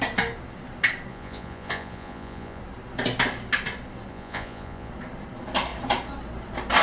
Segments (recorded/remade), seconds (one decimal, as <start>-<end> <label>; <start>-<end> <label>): 0.0-1.1 recorded; 1.1-2.6 remade; 2.6-4.1 recorded; 4.1-4.9 remade; 4.9-6.8 recorded